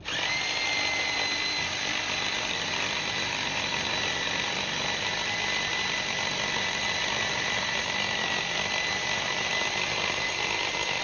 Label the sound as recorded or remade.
recorded